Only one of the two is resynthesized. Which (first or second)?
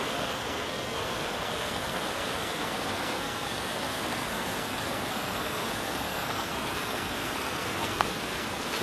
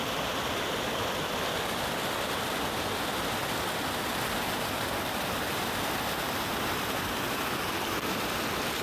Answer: first